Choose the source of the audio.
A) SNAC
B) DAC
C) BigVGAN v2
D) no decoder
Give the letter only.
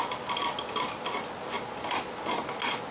D